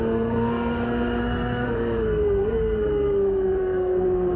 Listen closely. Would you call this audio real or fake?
fake